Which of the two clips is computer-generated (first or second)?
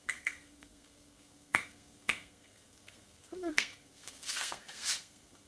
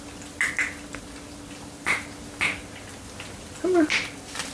first